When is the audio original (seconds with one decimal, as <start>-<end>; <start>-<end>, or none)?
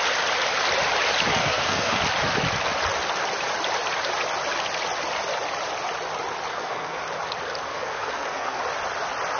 0.0-1.4; 2.0-6.5; 7.0-7.7; 8.6-9.4